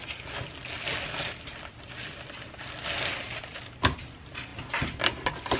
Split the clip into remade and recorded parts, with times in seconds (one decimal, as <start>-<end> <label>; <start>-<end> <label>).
0.0-3.4 recorded; 3.4-4.5 remade; 4.5-5.6 recorded